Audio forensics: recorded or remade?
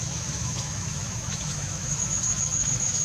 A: remade